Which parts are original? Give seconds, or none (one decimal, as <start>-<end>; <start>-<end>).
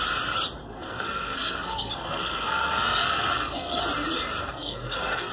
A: 0.0-0.6; 3.8-4.4